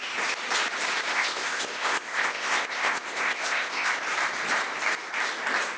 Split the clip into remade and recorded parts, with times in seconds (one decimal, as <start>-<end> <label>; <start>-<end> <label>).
0.0-1.1 recorded; 1.1-3.9 remade; 3.9-5.8 recorded